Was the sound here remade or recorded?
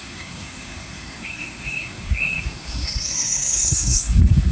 remade